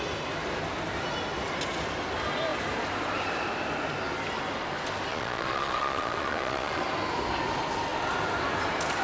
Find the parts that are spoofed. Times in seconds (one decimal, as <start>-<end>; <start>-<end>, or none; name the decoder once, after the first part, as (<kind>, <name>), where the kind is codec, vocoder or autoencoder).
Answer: 5.1-6.8 (vocoder, Vocos)